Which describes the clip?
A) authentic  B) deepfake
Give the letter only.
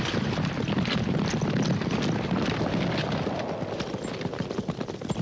A